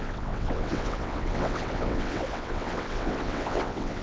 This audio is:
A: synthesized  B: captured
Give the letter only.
A